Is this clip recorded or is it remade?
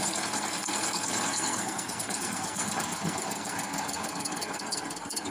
remade